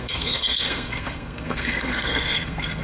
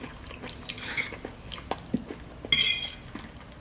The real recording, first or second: second